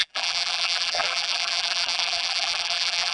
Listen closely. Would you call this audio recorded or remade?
remade